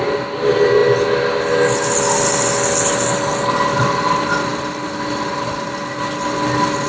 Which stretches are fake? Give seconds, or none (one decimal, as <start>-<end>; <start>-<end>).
none